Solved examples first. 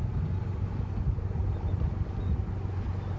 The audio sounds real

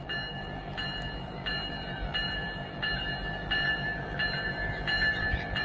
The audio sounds fake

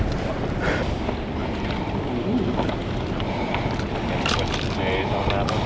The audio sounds real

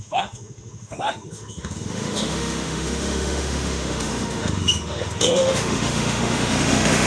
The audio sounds fake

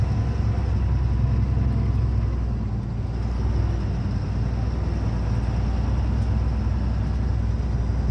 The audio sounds real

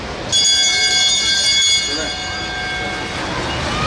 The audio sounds real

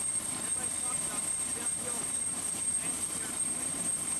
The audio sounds fake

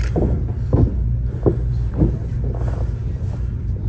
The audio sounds real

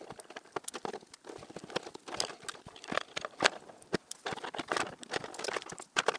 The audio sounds real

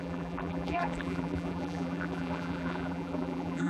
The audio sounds fake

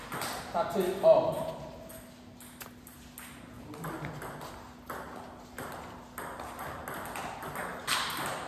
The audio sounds real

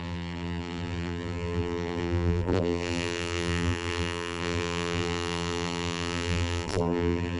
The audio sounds fake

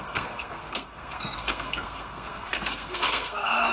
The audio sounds fake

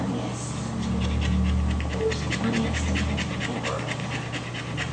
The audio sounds real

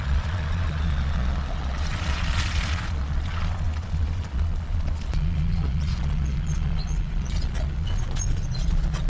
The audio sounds fake